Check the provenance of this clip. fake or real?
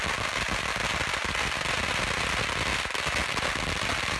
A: real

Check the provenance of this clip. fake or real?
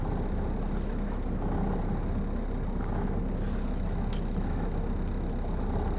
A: real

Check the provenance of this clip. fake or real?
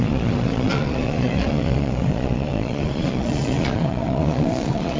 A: fake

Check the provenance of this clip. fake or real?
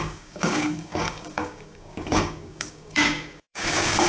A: fake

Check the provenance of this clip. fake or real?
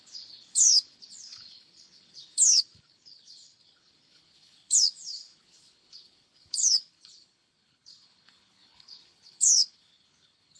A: fake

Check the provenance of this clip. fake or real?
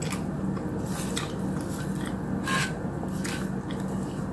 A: real